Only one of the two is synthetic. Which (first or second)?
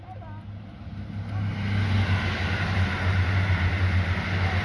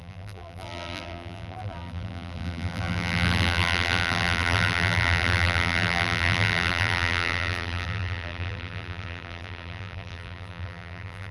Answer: second